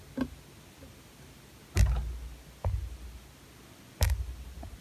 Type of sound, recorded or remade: recorded